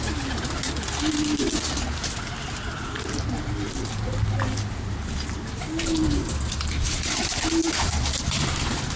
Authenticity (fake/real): real